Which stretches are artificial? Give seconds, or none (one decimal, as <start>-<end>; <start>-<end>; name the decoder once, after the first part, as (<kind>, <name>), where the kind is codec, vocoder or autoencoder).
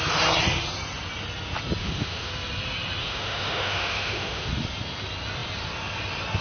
1.8-2.3 (autoencoder, DAC-VAE); 3.0-4.5